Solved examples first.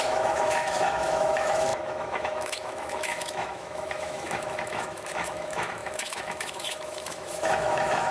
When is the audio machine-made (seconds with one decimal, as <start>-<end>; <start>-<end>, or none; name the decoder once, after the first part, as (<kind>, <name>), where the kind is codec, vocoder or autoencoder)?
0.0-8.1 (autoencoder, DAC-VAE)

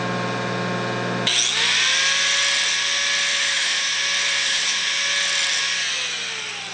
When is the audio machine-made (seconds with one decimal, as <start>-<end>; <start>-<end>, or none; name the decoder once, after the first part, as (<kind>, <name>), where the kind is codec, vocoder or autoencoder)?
3.3-4.0 (autoencoder, DAC-VAE); 4.4-5.0

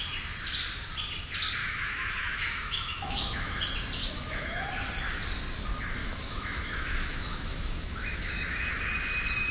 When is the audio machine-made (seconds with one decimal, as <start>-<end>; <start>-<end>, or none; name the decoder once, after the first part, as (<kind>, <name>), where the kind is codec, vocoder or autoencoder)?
1.6-3.6 (autoencoder, DAC-VAE); 4.0-4.7; 6.0-8.7

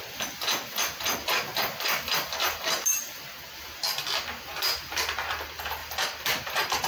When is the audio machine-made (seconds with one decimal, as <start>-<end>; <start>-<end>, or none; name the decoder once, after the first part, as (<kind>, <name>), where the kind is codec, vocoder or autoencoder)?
2.4-3.3 (vocoder, BigVGAN v2); 5.8-6.9

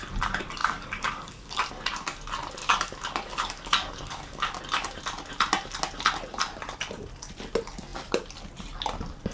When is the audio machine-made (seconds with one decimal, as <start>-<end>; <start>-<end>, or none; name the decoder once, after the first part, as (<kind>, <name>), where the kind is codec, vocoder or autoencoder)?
0.6-1.7 (codec, DAC); 2.6-4.6

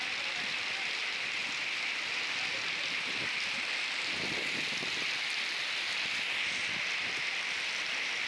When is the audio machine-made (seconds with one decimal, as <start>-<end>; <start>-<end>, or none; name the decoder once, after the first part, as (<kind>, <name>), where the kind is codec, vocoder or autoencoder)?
none

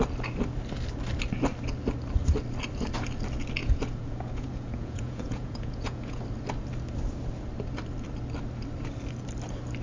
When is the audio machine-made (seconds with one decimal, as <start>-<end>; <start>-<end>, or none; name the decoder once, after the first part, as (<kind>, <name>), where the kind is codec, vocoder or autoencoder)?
3.6-6.2 (vocoder, Vocos)

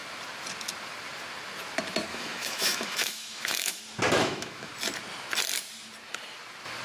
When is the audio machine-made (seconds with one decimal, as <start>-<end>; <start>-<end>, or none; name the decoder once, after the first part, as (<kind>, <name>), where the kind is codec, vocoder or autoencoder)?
2.1-3.8 (autoencoder, DAC-VAE); 4.2-4.7